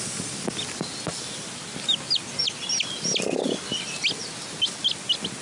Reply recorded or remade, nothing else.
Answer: recorded